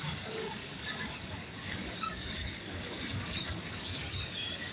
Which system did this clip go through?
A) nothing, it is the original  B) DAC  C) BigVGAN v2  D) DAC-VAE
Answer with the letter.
B